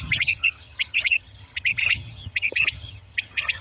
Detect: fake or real fake